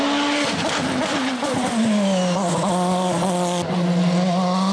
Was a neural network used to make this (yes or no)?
no